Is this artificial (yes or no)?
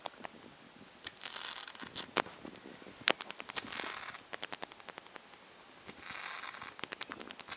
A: no